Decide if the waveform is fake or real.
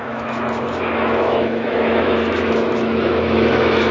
fake